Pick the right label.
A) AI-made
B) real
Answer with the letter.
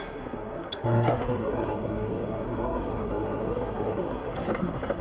A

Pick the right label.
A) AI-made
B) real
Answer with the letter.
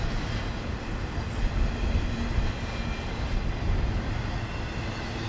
B